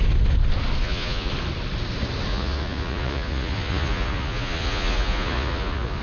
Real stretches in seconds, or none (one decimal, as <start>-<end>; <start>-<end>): 0.0-0.8; 1.3-2.3